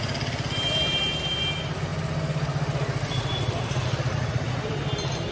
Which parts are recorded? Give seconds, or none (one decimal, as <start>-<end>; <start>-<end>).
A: 0.0-5.3